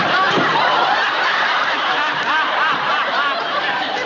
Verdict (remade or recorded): remade